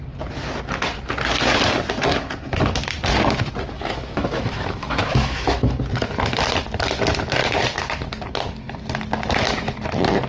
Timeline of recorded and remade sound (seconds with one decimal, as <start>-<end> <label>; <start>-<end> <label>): 0.0-3.7 recorded; 3.7-5.8 remade; 5.8-10.3 recorded